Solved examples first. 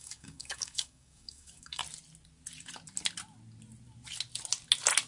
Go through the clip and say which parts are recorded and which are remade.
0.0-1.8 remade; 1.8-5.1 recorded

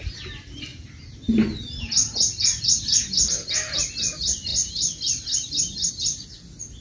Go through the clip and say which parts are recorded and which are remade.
0.0-4.5 recorded; 4.5-5.9 remade; 5.9-6.8 recorded

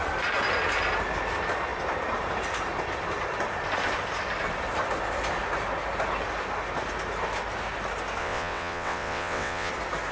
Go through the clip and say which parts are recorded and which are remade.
0.0-8.2 recorded; 8.2-9.7 remade; 9.7-10.1 recorded

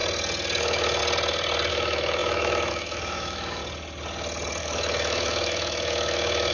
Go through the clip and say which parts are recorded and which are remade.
0.0-0.6 recorded; 0.6-1.0 remade; 1.0-1.7 recorded; 1.7-3.6 remade; 3.6-4.6 recorded; 4.6-6.5 remade